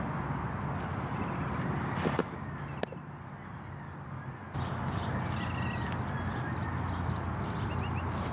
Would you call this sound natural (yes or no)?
yes